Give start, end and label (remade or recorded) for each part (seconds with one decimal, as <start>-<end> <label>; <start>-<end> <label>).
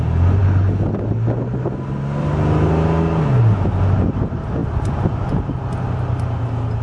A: 0.0-4.6 recorded; 4.6-5.5 remade; 5.5-6.8 recorded